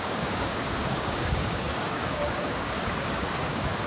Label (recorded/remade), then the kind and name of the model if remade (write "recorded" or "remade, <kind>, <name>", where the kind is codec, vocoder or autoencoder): remade, codec, DAC